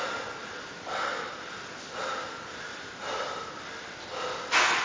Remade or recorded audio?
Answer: recorded